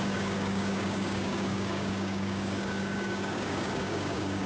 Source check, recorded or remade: remade